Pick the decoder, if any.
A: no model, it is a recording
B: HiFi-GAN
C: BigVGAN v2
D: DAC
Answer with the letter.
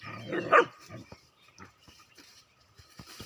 C